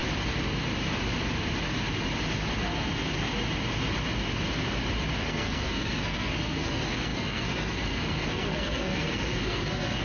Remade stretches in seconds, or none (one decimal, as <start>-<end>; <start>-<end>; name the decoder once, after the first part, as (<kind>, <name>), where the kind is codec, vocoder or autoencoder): 5.2-10.0 (codec, SNAC)